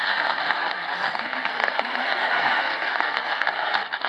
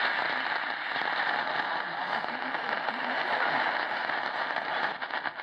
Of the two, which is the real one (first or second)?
second